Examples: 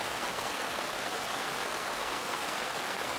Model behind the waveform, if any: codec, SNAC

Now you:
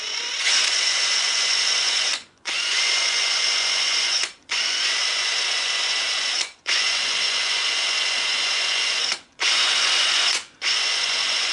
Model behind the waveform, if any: vocoder, Vocos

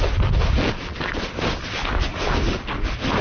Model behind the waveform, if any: none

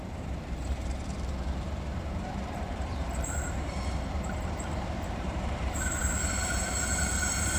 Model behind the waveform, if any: vocoder, BigVGAN v2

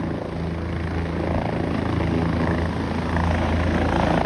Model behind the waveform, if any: none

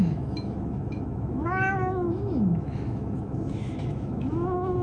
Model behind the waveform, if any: autoencoder, DAC-VAE